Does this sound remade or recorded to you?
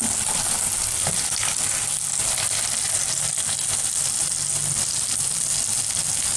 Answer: recorded